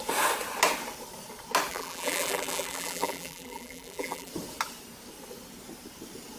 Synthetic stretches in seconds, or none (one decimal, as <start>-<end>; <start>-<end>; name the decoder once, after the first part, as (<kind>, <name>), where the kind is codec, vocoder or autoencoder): 1.7-4.3 (vocoder, BigVGAN v2)